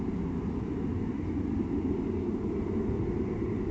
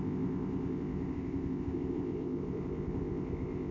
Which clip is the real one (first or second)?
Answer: first